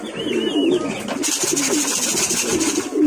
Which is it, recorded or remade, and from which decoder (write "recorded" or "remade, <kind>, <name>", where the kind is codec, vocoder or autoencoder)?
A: recorded